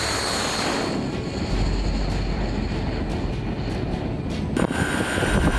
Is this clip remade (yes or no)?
no